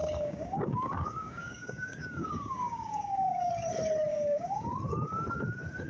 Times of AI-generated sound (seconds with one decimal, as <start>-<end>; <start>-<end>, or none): 0.0-3.5; 4.1-4.7